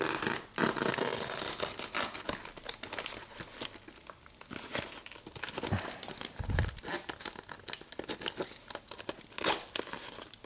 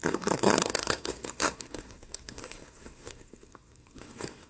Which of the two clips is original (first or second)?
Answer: first